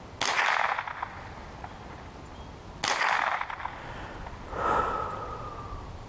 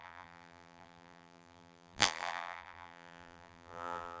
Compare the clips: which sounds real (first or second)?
first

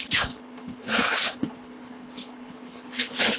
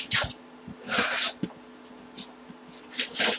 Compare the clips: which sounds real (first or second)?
second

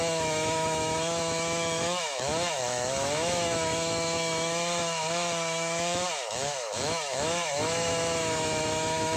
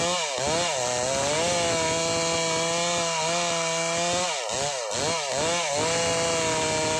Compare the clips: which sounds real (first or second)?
second